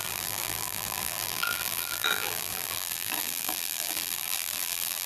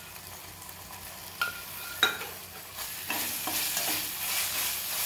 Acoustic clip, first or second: second